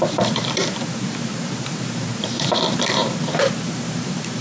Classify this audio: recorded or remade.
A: remade